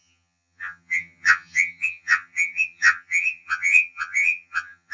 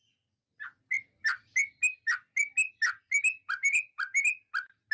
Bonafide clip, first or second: second